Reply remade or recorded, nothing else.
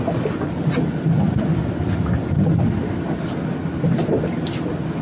recorded